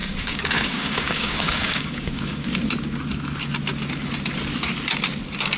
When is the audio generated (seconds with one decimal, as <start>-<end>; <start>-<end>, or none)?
0.0-2.5